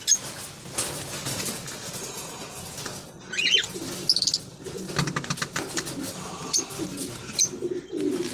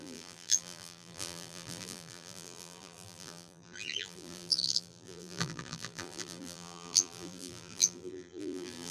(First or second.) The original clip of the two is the first